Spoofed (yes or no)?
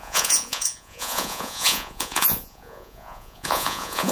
yes